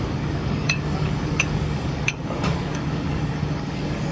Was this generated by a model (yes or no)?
yes